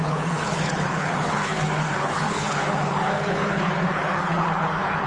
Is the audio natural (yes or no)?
no